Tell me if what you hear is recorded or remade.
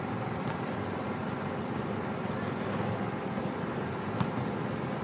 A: recorded